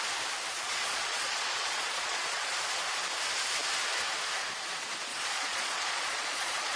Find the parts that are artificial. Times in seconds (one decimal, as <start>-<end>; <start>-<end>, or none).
0.5-2.5; 5.1-6.8